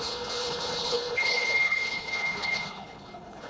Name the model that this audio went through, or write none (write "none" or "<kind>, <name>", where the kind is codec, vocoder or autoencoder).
codec, HILCodec